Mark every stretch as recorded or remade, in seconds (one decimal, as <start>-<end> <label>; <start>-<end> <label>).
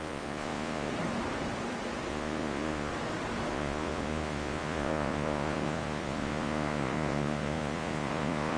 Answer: 0.0-0.9 remade; 0.9-2.1 recorded; 2.1-2.9 remade; 2.9-3.5 recorded; 3.5-8.6 remade